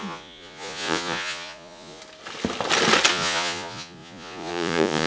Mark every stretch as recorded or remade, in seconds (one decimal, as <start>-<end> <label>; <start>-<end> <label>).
0.0-2.0 remade; 2.0-3.1 recorded; 3.1-5.1 remade